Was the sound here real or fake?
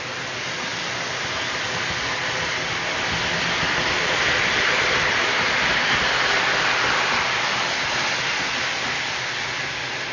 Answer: real